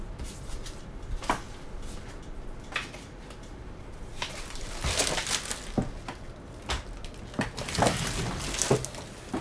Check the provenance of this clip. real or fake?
real